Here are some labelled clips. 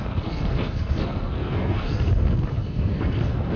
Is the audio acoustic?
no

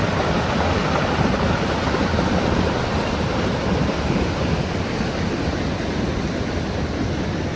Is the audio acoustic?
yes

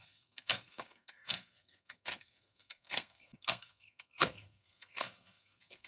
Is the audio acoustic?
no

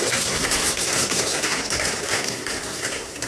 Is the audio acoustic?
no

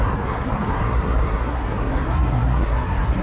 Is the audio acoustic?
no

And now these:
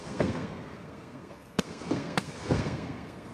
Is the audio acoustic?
no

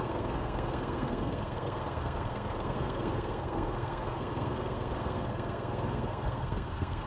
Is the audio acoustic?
no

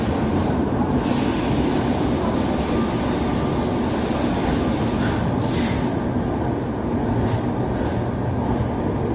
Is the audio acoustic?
yes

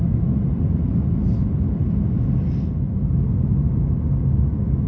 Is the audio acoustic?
yes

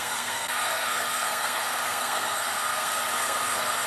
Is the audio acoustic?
no